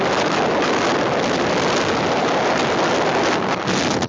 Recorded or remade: recorded